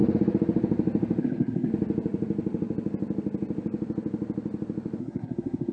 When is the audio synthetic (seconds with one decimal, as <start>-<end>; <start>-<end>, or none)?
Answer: 1.2-1.7; 5.0-5.7